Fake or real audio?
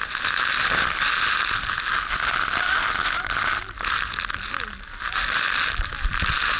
real